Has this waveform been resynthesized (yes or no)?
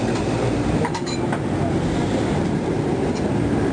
yes